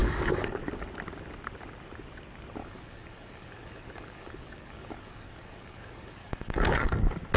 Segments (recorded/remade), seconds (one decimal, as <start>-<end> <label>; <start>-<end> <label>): 0.0-0.6 remade; 0.6-2.6 recorded; 2.6-7.0 remade; 7.0-7.4 recorded